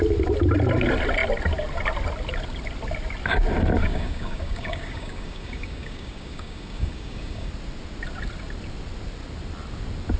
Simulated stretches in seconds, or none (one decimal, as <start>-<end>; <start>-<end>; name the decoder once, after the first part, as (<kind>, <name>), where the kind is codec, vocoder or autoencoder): 3.8-7.5 (codec, DAC)